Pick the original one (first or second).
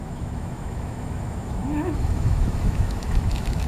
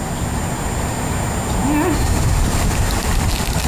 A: second